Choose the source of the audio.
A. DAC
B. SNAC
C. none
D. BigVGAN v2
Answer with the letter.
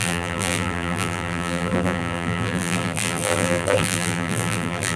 D